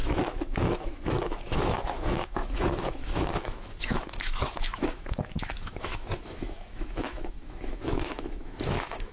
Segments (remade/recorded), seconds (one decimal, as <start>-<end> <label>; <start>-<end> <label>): 0.0-9.1 remade